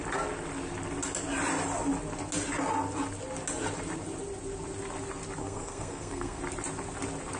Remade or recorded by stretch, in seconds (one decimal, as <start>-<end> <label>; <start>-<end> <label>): 0.0-5.4 recorded; 5.4-6.4 remade; 6.4-7.4 recorded